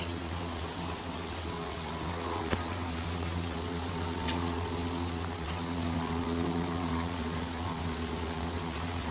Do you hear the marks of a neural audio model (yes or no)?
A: yes